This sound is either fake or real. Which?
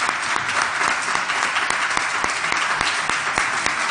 real